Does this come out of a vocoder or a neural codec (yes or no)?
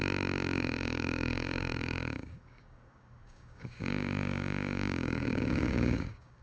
yes